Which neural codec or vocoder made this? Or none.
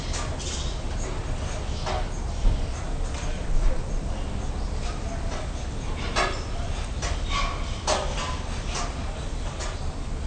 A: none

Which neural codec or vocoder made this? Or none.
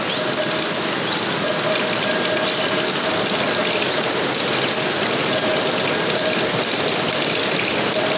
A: none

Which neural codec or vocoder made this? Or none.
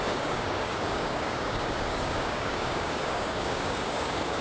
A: codec, DAC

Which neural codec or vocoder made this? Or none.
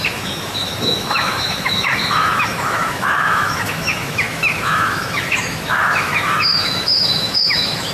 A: autoencoder, DAC-VAE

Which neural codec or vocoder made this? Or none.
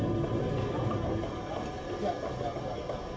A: none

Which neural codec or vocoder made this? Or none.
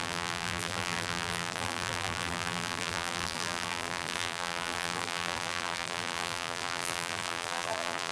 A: vocoder, BigVGAN v2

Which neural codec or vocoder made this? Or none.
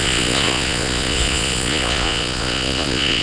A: vocoder, Vocos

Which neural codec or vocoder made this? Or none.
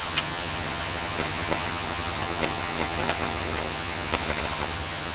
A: vocoder, HiFi-GAN